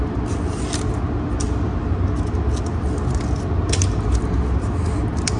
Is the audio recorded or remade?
recorded